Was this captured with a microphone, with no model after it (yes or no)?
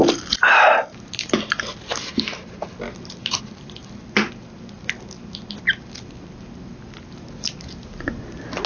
yes